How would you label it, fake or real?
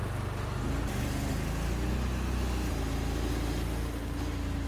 real